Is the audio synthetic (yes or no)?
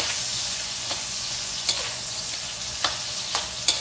yes